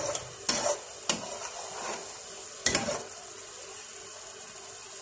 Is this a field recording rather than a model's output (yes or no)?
yes